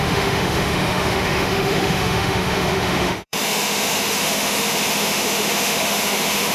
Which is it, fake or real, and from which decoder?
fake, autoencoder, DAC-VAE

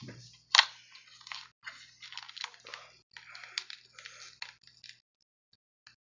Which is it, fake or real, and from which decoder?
real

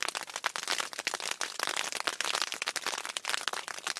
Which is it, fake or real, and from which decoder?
real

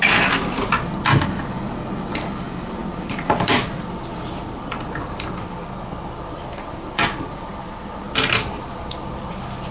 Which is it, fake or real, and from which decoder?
real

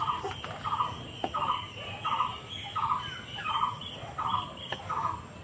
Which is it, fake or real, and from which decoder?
real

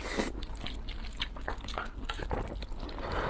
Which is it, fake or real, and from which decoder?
real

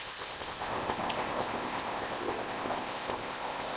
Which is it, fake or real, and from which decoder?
fake, codec, ZipCodec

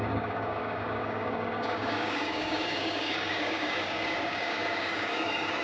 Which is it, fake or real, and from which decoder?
fake, codec, DAC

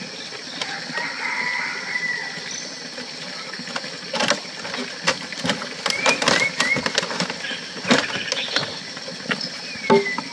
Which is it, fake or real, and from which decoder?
real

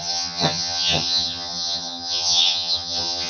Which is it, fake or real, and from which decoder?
fake, vocoder, HiFi-GAN